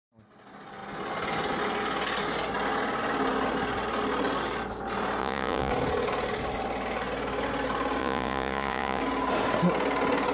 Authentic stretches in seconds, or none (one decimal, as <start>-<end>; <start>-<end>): 0.0-5.2; 5.7-8.0; 9.0-10.3